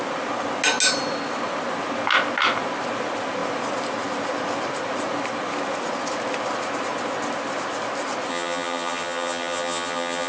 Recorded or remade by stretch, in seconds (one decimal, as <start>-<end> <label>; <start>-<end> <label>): 0.0-8.3 recorded; 8.3-10.3 remade